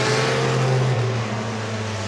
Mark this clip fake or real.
real